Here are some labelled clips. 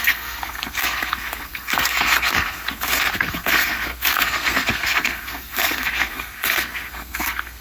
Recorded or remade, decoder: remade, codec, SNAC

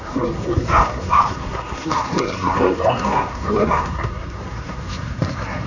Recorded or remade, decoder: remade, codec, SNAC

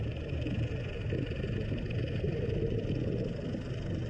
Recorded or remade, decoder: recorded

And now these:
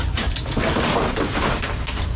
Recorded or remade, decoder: recorded